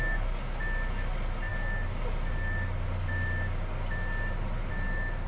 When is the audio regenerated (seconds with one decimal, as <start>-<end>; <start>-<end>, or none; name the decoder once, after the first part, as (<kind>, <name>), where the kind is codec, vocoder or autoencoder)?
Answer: none